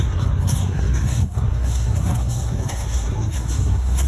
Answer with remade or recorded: remade